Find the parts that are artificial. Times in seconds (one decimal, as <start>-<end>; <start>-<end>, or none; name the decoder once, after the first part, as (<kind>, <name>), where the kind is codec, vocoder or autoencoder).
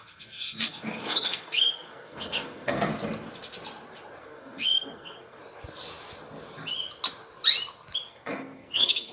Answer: 0.0-2.9 (codec, SNAC); 4.2-5.4; 8.1-9.1